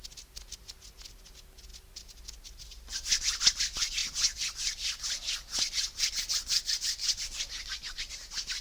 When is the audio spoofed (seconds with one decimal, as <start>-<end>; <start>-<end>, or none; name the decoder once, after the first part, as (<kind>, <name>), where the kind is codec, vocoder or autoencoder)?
none